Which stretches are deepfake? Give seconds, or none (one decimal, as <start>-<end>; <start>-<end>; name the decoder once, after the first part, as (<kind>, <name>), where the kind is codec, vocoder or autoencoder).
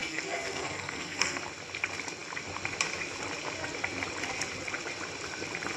0.0-1.4 (codec, SNAC)